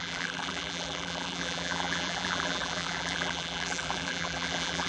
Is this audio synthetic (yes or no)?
yes